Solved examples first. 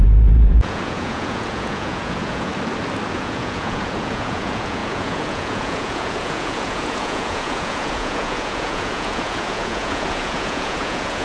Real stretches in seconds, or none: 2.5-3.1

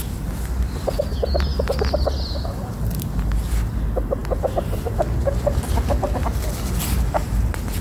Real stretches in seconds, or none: 0.0-7.8

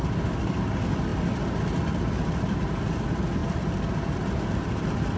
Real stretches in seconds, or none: 0.0-5.2

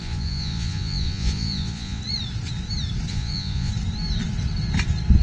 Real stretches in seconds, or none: 2.0-3.1; 3.7-5.2